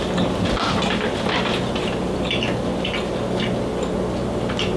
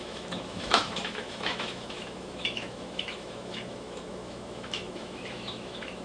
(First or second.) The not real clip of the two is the second